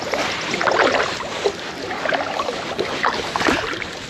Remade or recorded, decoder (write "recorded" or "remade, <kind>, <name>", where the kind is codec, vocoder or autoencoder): recorded